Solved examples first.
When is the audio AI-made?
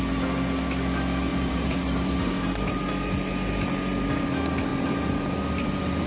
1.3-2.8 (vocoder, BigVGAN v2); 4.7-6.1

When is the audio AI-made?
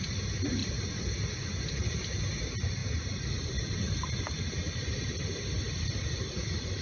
none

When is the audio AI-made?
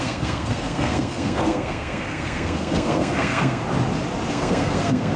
0.0-3.6 (codec, SNAC); 4.3-5.2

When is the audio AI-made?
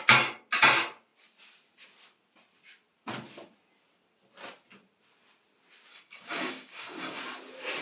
5.9-7.2 (codec, DAC)